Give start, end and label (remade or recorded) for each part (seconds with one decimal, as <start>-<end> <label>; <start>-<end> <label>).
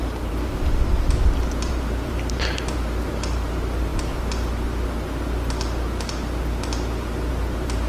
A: 0.0-0.8 remade; 0.8-1.7 recorded; 1.7-3.9 remade; 3.9-7.3 recorded; 7.3-7.9 remade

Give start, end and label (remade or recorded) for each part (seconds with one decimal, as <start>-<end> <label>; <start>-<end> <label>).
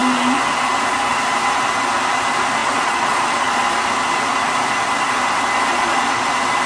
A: 0.0-2.6 recorded; 2.6-3.6 remade; 3.6-5.7 recorded; 5.7-6.2 remade; 6.2-6.7 recorded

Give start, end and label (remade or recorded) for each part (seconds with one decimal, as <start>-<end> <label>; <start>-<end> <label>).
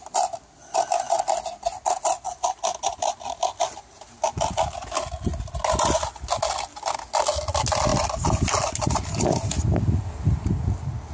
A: 0.0-11.1 recorded